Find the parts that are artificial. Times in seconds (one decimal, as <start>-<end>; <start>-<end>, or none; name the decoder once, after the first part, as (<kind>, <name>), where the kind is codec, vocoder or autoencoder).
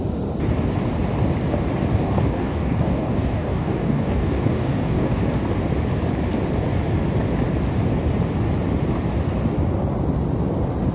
1.9-5.2 (codec, DAC)